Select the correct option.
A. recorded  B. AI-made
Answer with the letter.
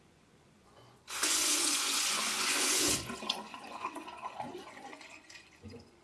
B